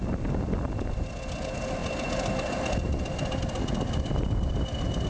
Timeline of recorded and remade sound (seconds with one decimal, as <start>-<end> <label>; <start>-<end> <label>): 0.0-5.1 recorded